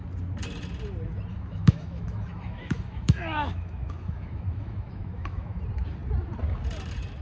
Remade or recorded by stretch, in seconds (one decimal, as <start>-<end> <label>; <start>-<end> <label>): 0.0-1.3 recorded; 1.3-5.6 remade; 5.6-7.2 recorded